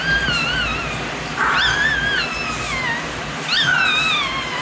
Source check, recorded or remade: recorded